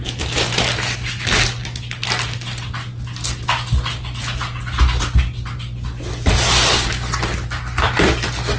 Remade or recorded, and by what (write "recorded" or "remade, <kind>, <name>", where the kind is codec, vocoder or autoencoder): recorded